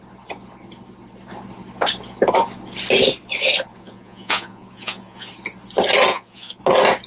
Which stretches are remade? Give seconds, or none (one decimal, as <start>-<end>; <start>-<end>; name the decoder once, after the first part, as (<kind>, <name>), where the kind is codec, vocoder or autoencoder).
3.7-5.3 (vocoder, Vocos); 6.1-6.6

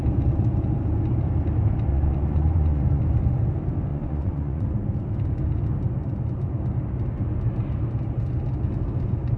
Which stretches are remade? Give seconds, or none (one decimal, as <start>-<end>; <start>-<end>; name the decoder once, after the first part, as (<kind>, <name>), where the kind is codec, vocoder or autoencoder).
1.9-3.0 (vocoder, Vocos); 3.9-4.7

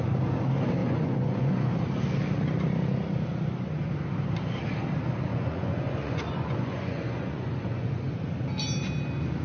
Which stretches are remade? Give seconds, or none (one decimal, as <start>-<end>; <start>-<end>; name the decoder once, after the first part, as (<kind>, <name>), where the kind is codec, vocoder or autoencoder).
0.8-1.7 (vocoder, Vocos); 5.3-8.0

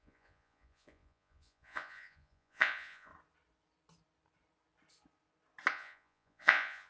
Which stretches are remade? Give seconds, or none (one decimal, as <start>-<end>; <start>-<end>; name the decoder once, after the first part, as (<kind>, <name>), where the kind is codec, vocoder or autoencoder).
0.0-3.1 (vocoder, Vocos); 5.7-6.9

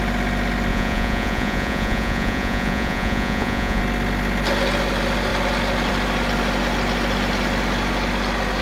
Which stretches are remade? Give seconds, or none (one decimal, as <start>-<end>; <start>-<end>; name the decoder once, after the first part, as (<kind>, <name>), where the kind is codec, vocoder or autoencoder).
0.7-3.8 (vocoder, Vocos)

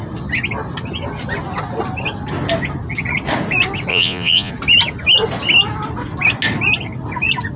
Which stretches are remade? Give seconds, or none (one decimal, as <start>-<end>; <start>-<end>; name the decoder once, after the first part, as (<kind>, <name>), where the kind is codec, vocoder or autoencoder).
3.9-4.5 (vocoder, Vocos)

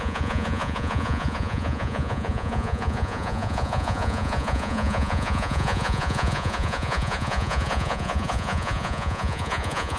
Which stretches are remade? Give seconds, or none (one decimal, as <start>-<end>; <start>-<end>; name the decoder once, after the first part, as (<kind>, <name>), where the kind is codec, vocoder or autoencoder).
0.0-10.0 (vocoder, Vocos)